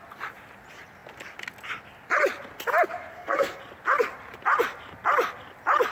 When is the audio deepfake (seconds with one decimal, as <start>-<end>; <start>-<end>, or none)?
3.1-3.6

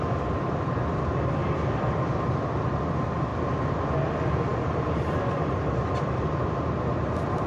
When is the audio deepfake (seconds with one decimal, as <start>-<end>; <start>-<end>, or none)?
1.4-1.9; 3.3-4.1; 4.5-7.1

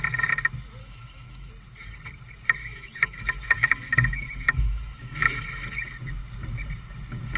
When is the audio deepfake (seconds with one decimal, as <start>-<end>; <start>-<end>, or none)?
0.8-1.5; 2.6-5.5

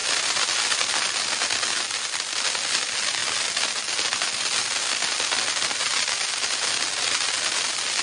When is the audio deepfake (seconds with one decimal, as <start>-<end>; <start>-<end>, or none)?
0.0-2.0; 3.2-5.9

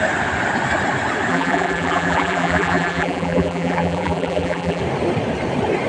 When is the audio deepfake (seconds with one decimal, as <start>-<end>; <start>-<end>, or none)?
1.3-4.8

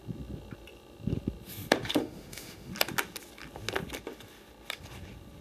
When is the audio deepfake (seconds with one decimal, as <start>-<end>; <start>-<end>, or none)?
2.0-2.7

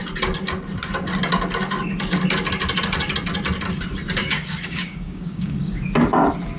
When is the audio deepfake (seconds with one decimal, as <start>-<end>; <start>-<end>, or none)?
4.2-5.8

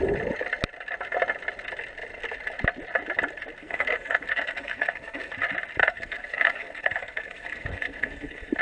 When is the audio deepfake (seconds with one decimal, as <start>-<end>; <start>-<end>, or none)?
3.6-5.3; 5.8-8.6